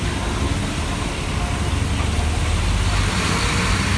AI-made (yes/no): no